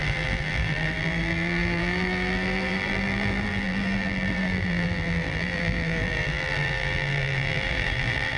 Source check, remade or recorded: remade